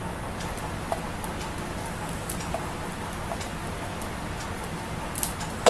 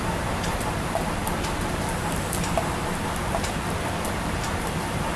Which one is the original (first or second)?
first